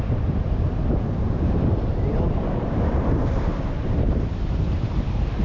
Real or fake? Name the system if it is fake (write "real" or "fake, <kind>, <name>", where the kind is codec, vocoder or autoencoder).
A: fake, vocoder, BigVGAN v2